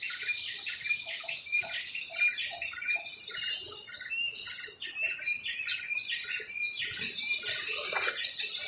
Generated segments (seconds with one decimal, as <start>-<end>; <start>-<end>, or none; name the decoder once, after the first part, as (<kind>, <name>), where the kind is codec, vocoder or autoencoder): 2.1-3.6 (vocoder, BigVGAN v2); 5.3-6.0; 6.6-8.1